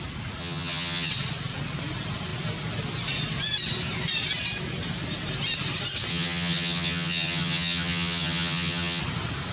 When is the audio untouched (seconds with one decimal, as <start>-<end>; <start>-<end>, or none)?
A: 0.0-0.4; 1.1-6.1; 9.0-9.5